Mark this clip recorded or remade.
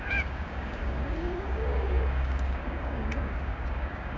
remade